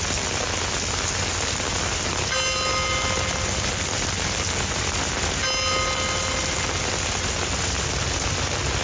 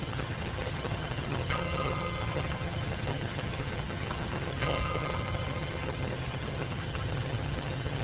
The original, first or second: first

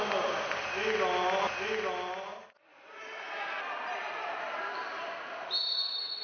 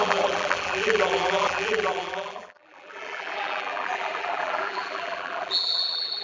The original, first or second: first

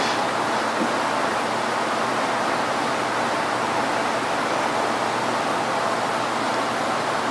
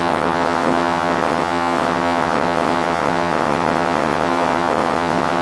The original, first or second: first